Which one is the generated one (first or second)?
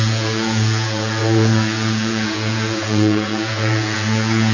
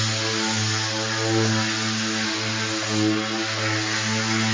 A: first